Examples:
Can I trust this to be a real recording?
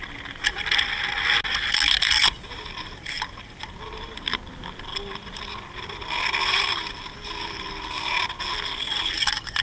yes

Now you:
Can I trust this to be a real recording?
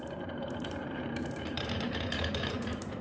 no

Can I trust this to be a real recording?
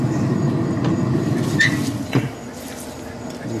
yes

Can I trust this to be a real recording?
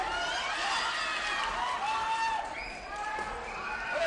yes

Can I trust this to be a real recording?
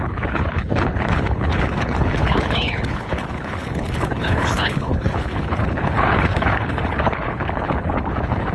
no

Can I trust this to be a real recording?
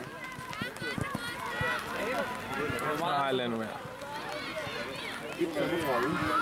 yes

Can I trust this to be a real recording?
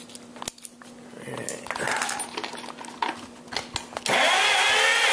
yes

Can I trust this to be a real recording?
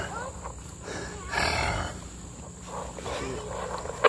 yes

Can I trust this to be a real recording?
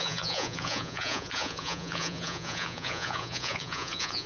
no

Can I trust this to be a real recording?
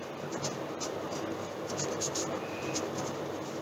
yes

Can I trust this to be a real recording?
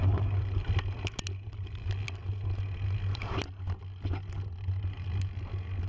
yes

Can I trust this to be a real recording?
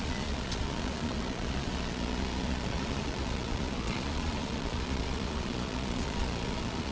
no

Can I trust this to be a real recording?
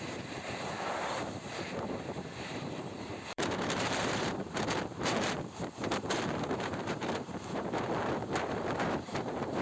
no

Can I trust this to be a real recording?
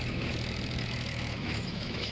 no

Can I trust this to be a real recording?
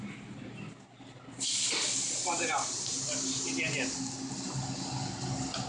yes